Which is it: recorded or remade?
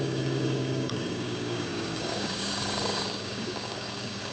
remade